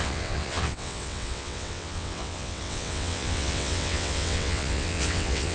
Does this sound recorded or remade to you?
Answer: remade